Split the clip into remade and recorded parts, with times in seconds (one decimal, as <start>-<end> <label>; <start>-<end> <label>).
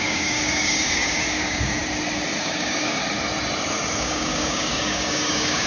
0.0-1.8 remade; 1.8-2.4 recorded; 2.4-3.0 remade; 3.0-4.0 recorded; 4.0-5.7 remade